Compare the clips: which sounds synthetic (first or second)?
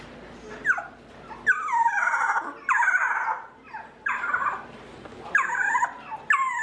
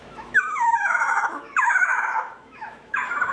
second